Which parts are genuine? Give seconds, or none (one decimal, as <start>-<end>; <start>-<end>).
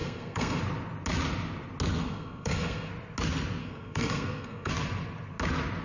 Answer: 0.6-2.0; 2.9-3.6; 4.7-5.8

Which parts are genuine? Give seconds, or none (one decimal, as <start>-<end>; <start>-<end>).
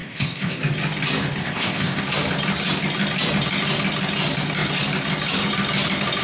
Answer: 0.6-1.4; 2.0-6.2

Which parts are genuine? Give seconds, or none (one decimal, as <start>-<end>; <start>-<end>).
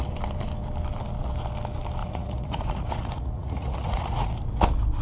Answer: 0.0-2.0; 4.3-5.0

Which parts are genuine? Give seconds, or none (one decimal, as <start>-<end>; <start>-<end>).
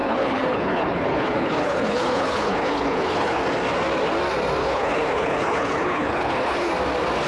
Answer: 3.4-4.6; 6.7-7.3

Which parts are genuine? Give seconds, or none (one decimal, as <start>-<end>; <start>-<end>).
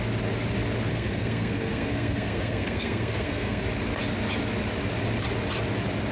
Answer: 0.0-0.9; 3.6-6.1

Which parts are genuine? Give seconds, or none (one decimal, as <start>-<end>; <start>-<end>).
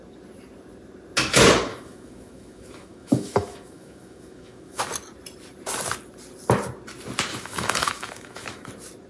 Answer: 0.0-1.7; 4.8-7.3; 8.7-9.1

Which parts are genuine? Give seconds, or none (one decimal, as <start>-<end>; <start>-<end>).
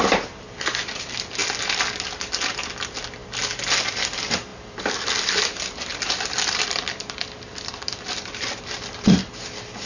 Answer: 1.4-2.6; 3.2-3.9